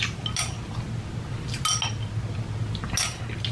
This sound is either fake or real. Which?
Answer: real